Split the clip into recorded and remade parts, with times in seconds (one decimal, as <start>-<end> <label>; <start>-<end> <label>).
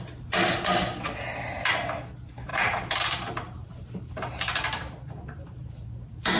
0.0-2.5 recorded; 2.5-6.4 remade